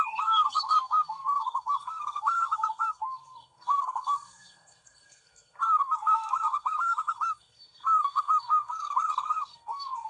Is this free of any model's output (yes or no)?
no